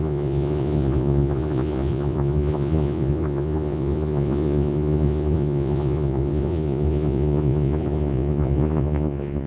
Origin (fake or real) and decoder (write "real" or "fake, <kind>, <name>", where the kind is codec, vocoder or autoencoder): fake, vocoder, Vocos